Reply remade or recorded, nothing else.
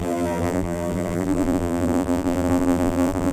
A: remade